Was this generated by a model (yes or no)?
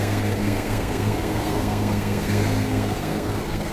yes